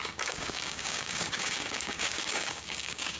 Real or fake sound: fake